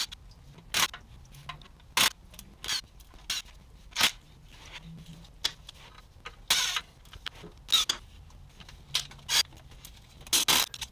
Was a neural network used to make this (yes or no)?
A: no